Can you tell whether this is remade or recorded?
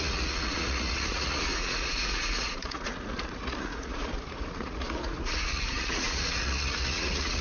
remade